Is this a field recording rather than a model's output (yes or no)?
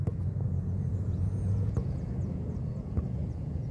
no